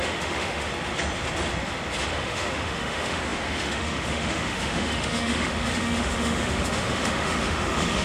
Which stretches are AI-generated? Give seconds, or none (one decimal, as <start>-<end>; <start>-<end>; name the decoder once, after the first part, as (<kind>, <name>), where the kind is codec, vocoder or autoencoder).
0.0-0.7 (autoencoder, DAC-VAE); 2.1-8.0